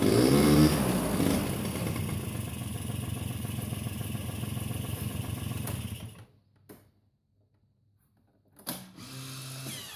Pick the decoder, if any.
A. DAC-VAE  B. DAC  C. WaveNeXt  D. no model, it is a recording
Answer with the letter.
D